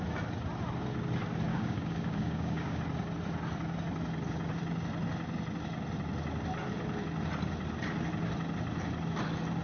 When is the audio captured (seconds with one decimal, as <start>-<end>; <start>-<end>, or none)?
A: 0.0-1.5; 2.8-9.6